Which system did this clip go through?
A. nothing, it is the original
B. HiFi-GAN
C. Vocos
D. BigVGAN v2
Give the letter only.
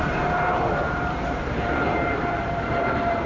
D